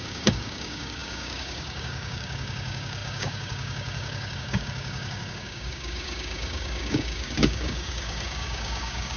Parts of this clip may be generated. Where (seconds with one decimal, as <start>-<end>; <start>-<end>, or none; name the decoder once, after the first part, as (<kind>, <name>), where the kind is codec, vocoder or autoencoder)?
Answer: 0.0-9.2 (codec, DAC)